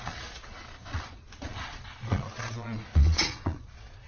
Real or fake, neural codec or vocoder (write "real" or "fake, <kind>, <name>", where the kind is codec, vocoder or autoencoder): fake, vocoder, Vocos